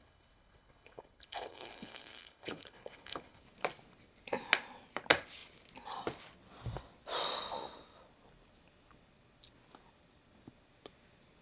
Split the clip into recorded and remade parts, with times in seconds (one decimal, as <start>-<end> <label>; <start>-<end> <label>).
0.0-3.4 remade; 3.4-11.4 recorded